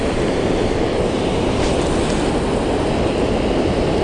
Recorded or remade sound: remade